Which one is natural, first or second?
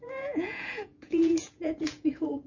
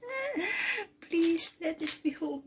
second